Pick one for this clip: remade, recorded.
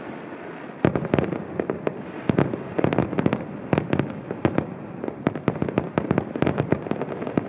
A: remade